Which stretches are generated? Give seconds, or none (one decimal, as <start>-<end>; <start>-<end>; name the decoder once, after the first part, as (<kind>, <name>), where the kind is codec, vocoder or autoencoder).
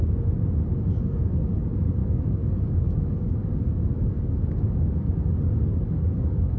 0.8-6.6 (codec, DAC)